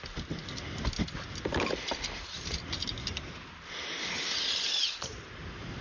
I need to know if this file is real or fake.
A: real